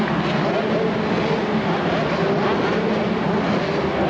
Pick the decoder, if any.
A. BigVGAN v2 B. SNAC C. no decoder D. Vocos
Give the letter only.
C